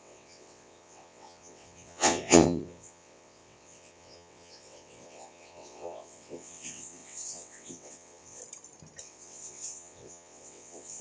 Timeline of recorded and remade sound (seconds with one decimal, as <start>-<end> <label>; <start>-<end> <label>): 0.0-8.4 remade; 8.4-9.0 recorded; 9.0-11.0 remade